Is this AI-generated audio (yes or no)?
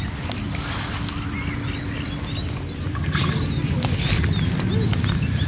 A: no